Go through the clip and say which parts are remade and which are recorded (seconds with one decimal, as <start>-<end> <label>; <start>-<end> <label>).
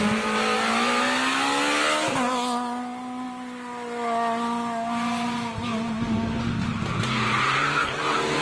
0.0-8.4 recorded